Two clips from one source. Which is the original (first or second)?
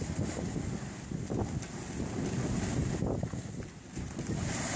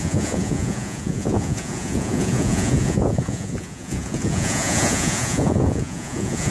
first